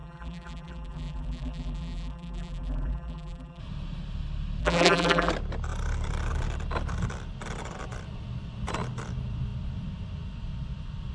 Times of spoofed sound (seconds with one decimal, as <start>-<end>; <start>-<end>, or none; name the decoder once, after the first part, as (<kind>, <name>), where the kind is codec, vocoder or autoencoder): 0.0-3.6 (vocoder, BigVGAN v2); 4.6-5.3